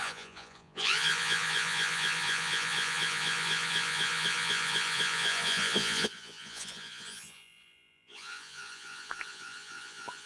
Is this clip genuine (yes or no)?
no